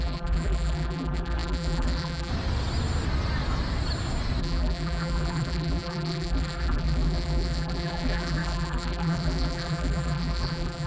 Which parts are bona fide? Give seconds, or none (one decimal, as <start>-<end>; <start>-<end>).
2.3-4.4